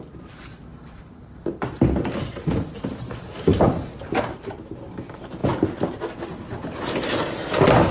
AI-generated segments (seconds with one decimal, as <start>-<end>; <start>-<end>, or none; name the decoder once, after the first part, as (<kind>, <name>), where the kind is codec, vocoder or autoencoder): 0.0-5.4 (vocoder, BigVGAN v2)